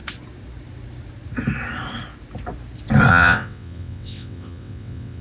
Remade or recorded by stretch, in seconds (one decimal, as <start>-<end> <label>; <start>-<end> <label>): 0.0-3.1 recorded; 3.1-5.2 remade